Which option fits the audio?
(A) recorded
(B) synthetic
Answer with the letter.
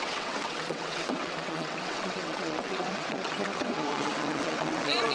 B